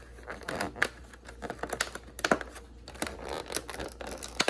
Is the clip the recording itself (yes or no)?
yes